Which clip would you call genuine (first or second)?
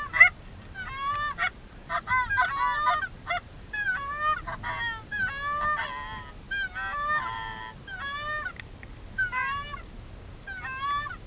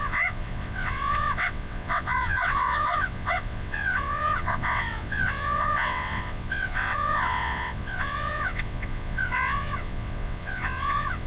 first